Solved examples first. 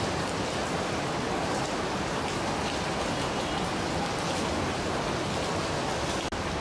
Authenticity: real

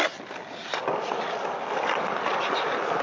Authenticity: fake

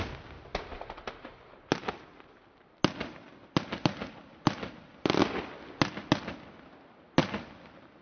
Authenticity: real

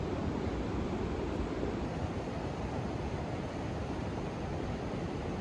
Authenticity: fake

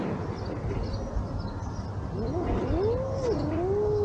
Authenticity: real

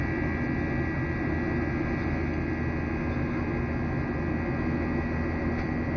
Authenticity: real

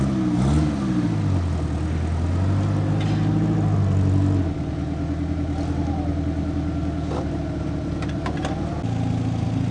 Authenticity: real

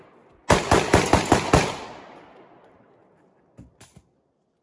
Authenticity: real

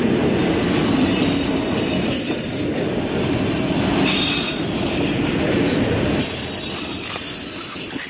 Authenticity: fake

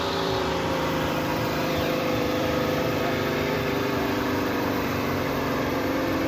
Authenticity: fake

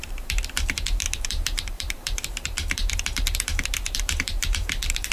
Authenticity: fake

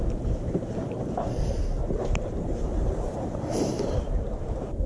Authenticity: fake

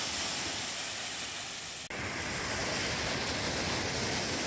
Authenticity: real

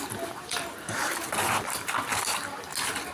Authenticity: real